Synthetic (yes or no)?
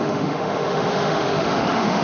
yes